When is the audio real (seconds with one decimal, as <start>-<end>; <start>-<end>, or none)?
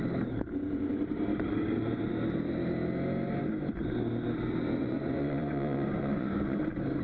0.0-1.3; 2.0-4.8; 6.6-7.0